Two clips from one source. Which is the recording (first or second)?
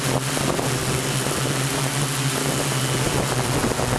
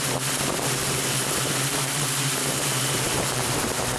first